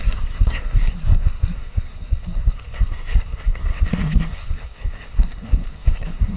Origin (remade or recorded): remade